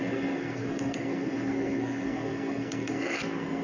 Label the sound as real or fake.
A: fake